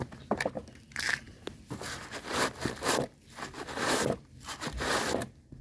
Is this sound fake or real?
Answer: fake